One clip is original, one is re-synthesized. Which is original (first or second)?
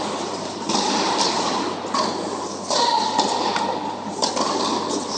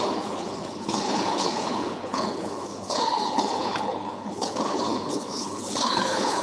first